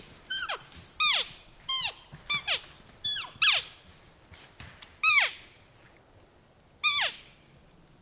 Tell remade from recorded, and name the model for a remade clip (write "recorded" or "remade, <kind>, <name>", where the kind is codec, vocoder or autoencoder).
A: recorded